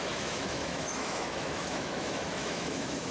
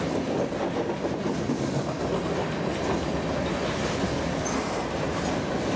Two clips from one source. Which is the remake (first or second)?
first